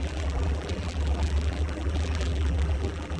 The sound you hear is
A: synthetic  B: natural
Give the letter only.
A